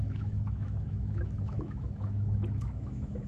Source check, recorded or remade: remade